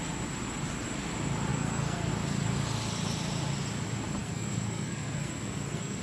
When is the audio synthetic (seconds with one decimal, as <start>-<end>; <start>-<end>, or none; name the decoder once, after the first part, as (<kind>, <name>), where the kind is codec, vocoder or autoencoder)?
1.5-2.1 (codec, SNAC); 4.2-6.0